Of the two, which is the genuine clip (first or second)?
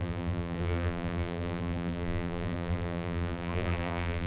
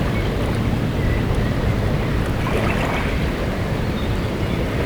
second